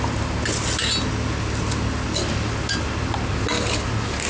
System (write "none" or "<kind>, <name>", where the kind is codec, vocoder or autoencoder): none